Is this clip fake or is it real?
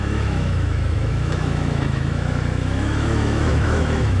fake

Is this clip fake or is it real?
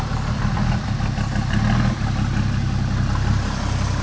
real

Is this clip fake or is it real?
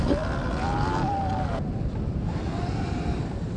real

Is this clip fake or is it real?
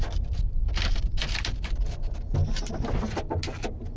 real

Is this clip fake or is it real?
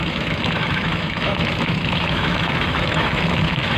fake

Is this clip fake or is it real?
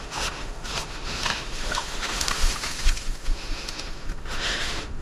fake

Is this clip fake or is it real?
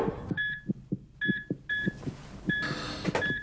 real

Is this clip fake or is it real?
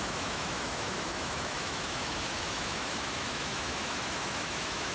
fake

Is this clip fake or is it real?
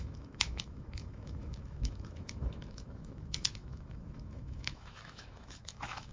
fake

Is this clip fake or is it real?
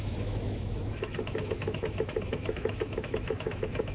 fake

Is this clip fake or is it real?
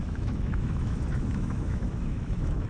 fake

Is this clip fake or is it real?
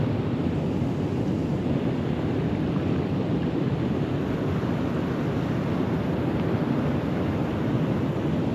real